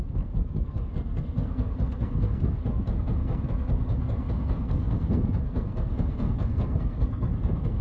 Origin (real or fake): fake